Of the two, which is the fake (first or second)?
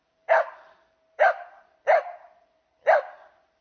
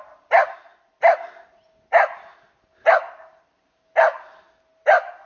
first